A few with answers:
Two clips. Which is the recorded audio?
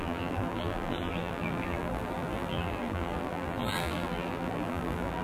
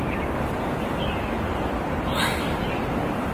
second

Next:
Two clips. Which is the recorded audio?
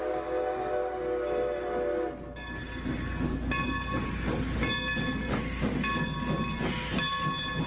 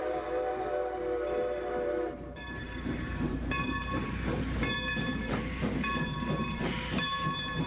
first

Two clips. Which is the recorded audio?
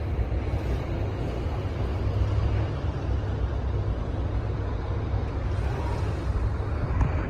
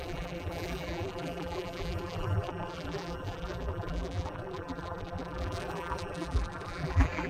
first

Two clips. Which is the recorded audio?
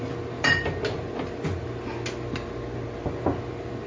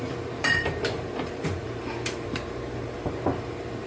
first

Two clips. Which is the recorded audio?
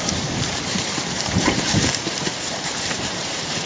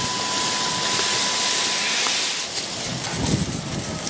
second